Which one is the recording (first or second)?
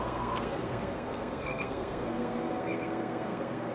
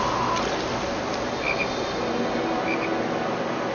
second